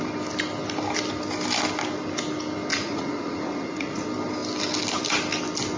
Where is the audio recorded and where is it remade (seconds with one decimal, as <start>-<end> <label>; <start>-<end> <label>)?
0.0-2.7 recorded; 2.7-4.0 remade; 4.0-5.8 recorded